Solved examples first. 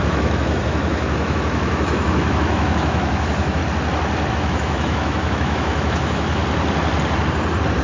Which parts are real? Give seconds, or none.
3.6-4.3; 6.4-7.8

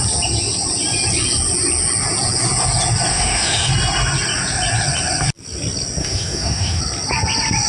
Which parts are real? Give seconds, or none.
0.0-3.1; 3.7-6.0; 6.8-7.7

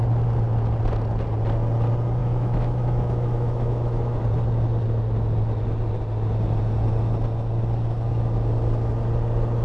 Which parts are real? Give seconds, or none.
0.0-2.2; 4.2-9.6

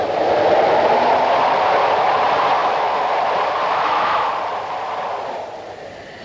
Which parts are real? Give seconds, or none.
0.0-2.6; 3.1-3.7; 4.3-6.2